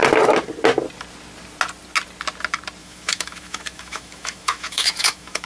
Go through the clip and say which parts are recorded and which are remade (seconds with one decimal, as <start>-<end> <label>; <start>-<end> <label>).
0.0-2.8 recorded; 2.8-5.5 remade